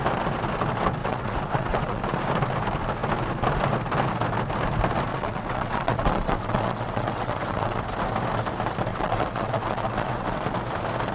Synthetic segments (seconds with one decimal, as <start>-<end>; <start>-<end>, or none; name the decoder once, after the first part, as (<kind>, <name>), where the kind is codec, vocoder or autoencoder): 1.0-2.0 (vocoder, WaveNeXt); 5.1-7.8; 8.9-10.4